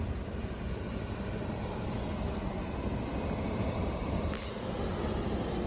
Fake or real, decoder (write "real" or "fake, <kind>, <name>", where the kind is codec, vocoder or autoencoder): real